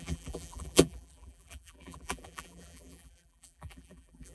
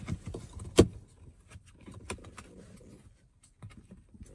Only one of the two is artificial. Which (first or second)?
first